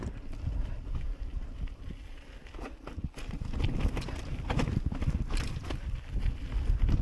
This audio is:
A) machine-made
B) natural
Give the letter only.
B